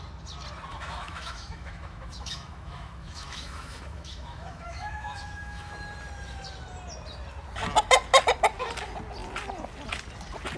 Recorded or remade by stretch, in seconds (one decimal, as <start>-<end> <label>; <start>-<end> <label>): 0.0-0.7 recorded; 0.7-5.7 remade; 5.7-10.6 recorded